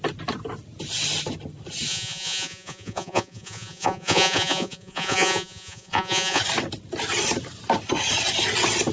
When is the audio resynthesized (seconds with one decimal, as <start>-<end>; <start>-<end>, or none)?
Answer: 1.9-6.4